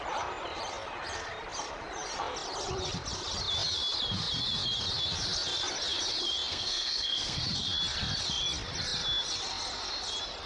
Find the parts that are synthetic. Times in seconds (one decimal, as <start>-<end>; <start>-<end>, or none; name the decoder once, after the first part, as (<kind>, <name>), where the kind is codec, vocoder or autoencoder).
6.5-7.4 (codec, SNAC)